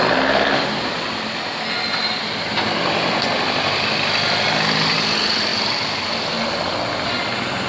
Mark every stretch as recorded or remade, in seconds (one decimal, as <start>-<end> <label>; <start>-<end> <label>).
0.0-5.5 recorded; 5.5-6.3 remade; 6.3-7.7 recorded